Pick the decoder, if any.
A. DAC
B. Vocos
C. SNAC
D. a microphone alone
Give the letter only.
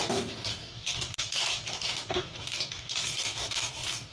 A